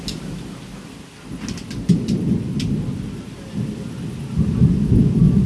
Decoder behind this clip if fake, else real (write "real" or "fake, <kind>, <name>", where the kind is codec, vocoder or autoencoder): real